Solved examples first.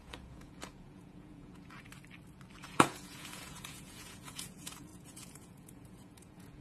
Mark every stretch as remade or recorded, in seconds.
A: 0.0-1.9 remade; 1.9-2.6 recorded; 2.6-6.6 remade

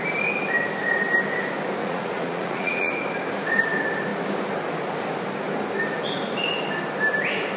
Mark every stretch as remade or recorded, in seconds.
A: 0.0-1.8 recorded; 1.8-2.9 remade; 2.9-7.6 recorded

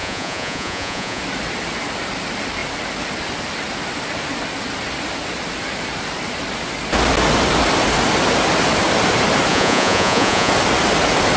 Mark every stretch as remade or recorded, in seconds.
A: 0.0-1.2 remade; 1.2-9.5 recorded; 9.5-10.5 remade; 10.5-11.4 recorded

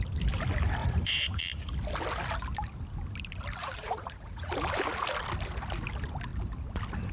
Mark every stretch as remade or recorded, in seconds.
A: 0.0-0.8 recorded; 0.8-1.4 remade; 1.4-3.6 recorded; 3.6-4.5 remade; 4.5-7.1 recorded

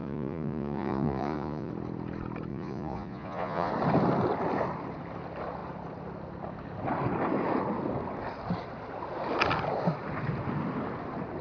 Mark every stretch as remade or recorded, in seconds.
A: 0.0-1.7 remade; 1.7-2.5 recorded; 2.5-3.7 remade; 3.7-11.4 recorded

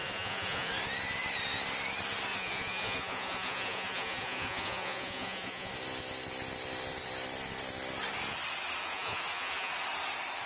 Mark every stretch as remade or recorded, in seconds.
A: 0.0-0.7 remade; 0.7-2.3 recorded; 2.3-5.7 remade; 5.7-8.8 recorded; 8.8-9.7 remade; 9.7-10.5 recorded